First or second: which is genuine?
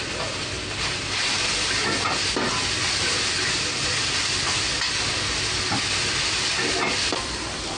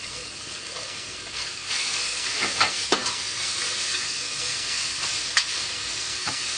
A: first